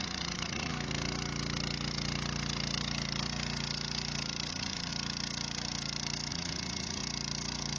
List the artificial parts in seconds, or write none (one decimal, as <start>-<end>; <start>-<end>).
0.0-0.7; 4.5-4.9; 6.3-7.0